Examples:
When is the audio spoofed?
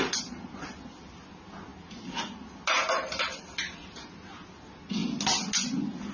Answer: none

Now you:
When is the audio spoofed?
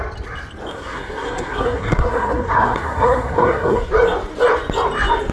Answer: 0.7-3.9 (codec, SNAC)